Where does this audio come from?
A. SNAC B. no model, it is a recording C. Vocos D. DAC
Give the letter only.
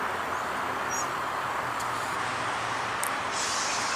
B